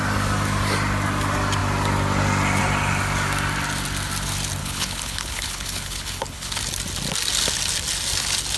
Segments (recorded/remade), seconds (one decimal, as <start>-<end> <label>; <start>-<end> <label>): 0.0-4.6 recorded; 4.6-6.6 remade; 6.6-8.6 recorded